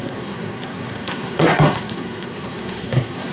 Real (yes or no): no